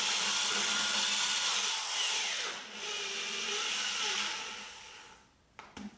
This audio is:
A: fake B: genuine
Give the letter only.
B